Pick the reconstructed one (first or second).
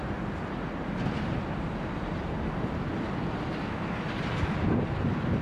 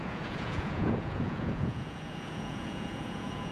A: second